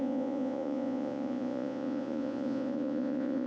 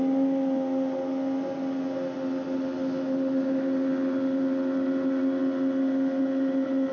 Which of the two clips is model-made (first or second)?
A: first